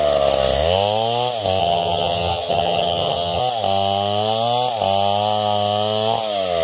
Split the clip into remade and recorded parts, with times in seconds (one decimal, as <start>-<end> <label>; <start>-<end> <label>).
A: 0.0-1.6 recorded; 1.6-3.4 remade; 3.4-6.6 recorded